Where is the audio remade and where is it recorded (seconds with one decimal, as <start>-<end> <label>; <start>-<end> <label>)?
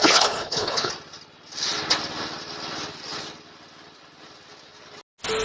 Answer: 0.0-0.9 remade; 0.9-5.4 recorded